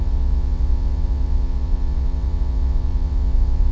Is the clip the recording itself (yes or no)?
no